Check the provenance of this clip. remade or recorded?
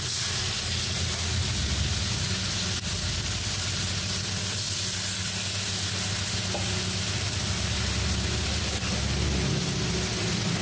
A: recorded